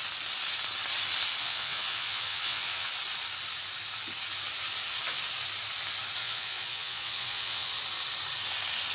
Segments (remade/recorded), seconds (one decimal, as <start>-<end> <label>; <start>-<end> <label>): 0.0-1.4 recorded; 1.4-2.9 remade; 2.9-6.2 recorded; 6.2-7.7 remade; 7.7-8.9 recorded